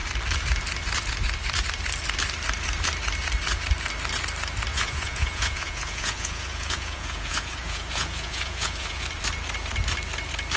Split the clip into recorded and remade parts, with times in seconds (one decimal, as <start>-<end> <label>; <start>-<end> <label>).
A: 0.0-4.7 recorded; 4.7-9.0 remade; 9.0-10.6 recorded